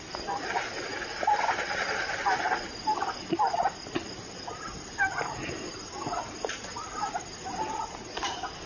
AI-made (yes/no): no